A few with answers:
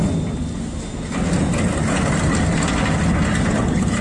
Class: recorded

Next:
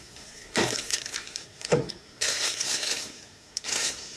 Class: remade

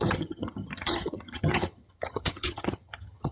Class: remade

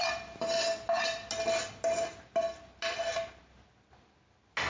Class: recorded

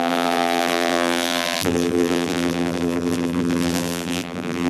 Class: remade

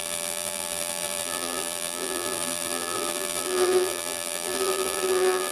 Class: remade